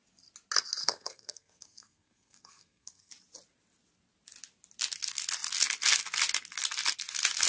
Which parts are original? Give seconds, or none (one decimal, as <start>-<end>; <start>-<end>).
0.0-0.8; 3.1-7.5